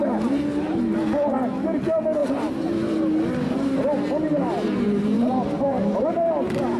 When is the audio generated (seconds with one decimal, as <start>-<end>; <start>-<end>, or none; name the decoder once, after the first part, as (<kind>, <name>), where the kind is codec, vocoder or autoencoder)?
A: 2.2-6.3 (vocoder, BigVGAN v2)